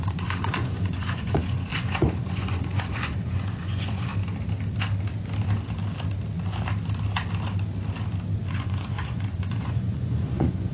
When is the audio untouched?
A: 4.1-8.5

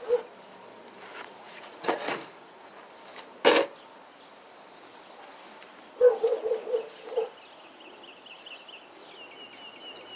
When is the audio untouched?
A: 0.0-1.1; 2.8-10.2

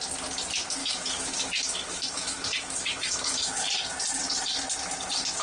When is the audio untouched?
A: 0.0-0.8; 3.7-5.4

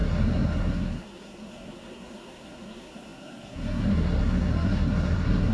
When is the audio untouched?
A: none

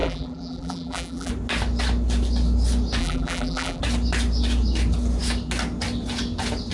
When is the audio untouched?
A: 1.3-3.0; 3.8-6.7

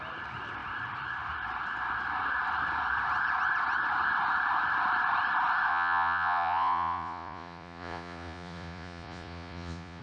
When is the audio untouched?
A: 0.0-5.7

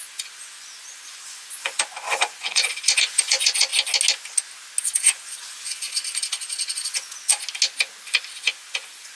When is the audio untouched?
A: 3.7-4.8; 7.3-8.4

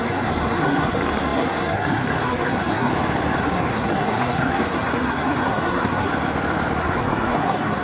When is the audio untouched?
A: 2.9-3.4; 6.1-6.8